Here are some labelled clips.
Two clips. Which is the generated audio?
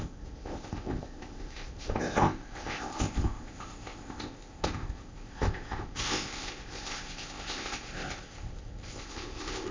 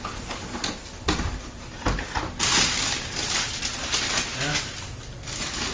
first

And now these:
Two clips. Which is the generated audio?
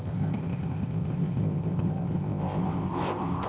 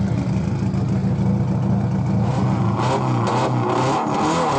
first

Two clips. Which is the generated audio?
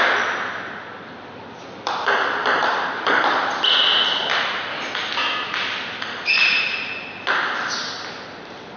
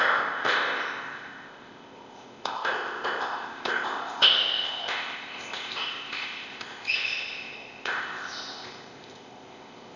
second